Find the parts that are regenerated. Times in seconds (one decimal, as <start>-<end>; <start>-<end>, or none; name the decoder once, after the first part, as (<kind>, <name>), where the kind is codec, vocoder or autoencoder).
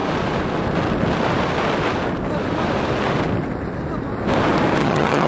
4.8-5.3 (vocoder, HiFi-GAN)